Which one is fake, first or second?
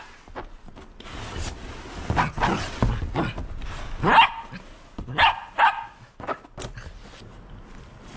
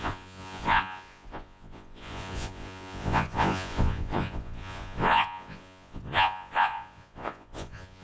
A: second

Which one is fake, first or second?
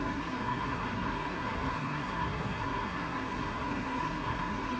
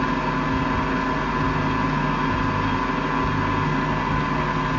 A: first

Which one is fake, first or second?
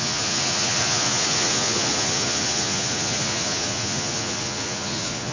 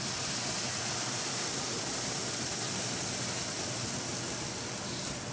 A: first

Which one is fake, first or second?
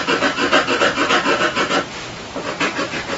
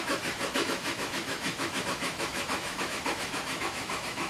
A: second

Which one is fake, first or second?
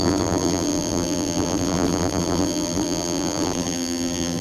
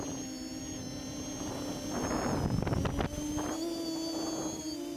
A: first